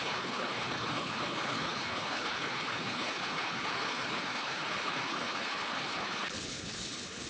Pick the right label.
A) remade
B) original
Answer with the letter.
A